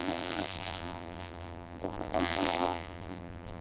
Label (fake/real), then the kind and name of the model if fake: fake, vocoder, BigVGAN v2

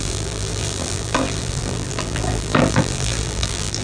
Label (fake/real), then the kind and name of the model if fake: fake, vocoder, BigVGAN v2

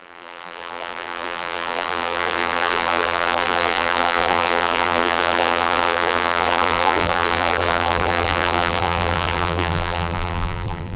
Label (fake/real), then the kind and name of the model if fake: fake, vocoder, BigVGAN v2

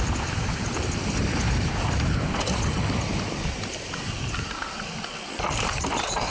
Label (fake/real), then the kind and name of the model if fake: fake, vocoder, BigVGAN v2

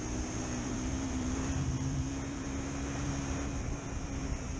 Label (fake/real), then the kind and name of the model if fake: fake, vocoder, BigVGAN v2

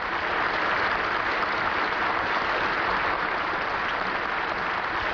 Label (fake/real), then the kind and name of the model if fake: real